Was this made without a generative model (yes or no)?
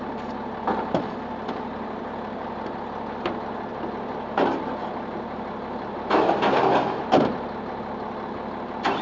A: yes